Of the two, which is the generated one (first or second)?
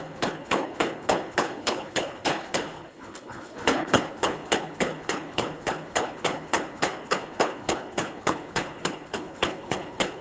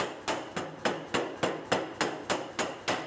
first